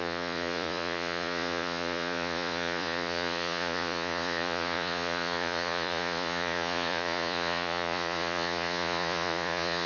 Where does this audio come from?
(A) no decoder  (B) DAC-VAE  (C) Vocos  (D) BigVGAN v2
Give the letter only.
C